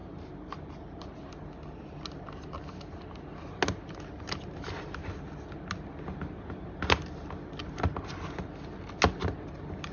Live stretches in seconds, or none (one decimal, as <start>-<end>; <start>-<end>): 1.3-9.9